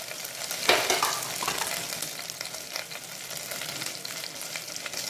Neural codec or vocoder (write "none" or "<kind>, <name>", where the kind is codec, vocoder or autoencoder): vocoder, BigVGAN v2